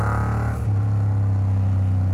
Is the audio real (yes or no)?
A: yes